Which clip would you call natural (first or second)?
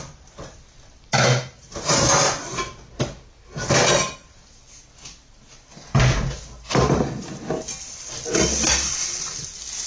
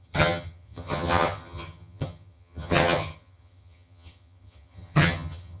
first